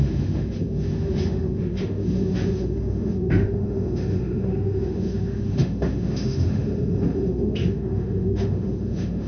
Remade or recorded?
remade